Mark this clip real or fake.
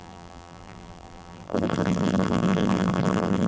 fake